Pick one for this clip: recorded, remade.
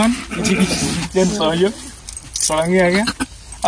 recorded